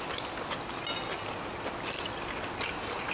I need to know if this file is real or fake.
real